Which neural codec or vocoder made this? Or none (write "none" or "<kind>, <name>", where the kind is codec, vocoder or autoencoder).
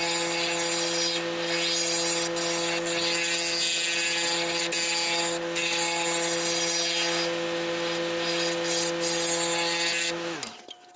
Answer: none